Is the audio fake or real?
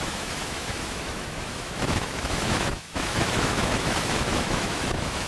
fake